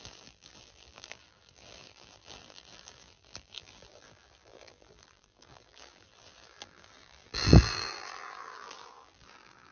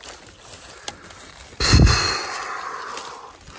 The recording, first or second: second